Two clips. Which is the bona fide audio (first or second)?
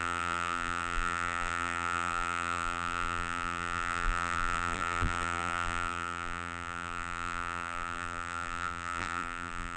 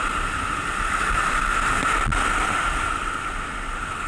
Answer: second